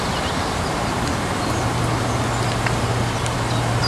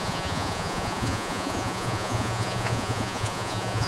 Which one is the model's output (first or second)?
second